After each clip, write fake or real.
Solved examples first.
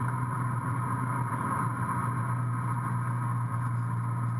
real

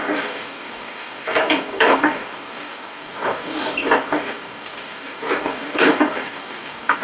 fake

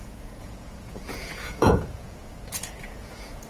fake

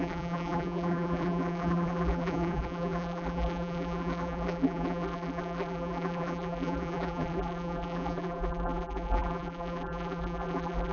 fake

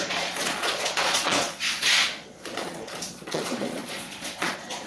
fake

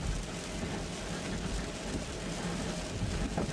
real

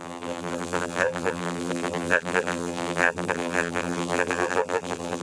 fake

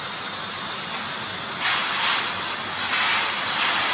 real